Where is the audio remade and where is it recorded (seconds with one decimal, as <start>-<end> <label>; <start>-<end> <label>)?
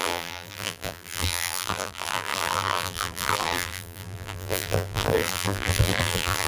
0.0-6.5 remade